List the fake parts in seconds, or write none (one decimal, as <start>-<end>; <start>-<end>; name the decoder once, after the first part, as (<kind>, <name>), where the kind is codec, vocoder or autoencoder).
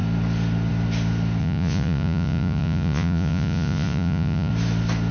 1.4-4.5 (vocoder, Vocos)